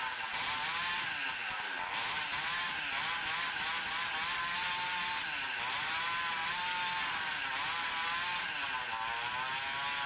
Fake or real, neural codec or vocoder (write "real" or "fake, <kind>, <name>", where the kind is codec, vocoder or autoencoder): real